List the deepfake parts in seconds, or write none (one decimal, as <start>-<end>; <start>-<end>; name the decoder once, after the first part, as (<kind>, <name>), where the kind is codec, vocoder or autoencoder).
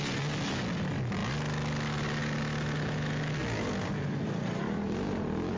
none